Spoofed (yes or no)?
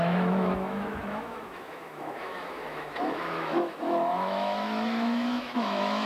yes